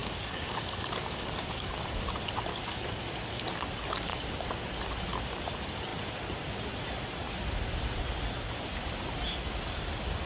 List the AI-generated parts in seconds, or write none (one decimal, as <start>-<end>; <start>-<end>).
0.0-1.8; 2.5-3.4